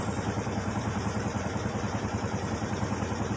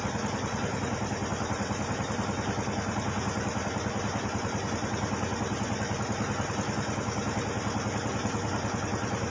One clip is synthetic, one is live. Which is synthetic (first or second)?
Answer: first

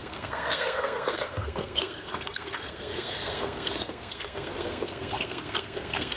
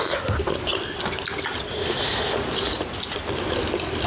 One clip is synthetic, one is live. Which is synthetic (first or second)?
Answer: first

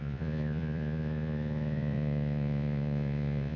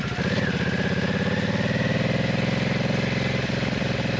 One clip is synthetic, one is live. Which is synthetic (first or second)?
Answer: first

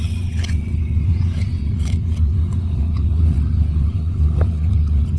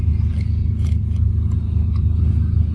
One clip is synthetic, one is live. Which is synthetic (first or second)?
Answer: first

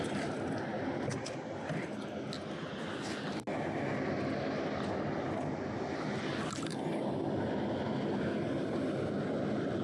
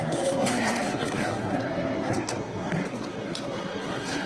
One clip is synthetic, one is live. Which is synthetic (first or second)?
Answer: second